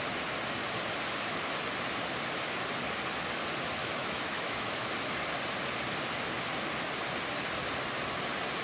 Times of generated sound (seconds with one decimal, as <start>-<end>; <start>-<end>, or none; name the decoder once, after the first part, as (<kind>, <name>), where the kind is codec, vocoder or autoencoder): 3.8-4.9 (autoencoder, DAC-VAE)